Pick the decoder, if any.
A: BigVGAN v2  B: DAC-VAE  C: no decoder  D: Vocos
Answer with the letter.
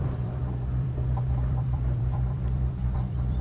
A